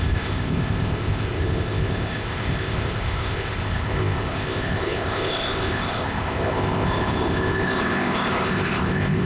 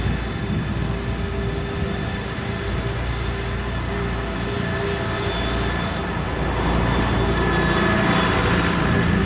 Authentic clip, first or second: second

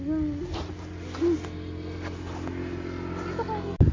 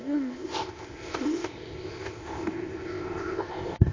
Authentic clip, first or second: first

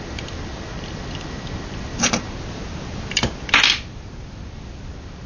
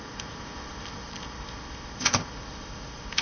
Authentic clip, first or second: first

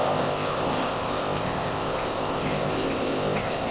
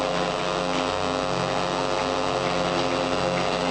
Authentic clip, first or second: second